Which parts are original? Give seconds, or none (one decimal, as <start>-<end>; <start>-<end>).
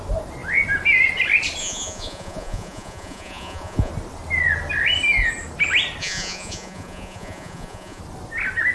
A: 0.0-1.6; 3.9-6.0; 8.0-8.7